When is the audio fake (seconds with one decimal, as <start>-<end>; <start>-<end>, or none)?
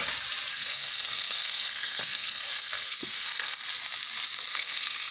0.5-3.6; 4.5-5.1